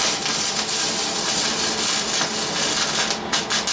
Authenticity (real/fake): real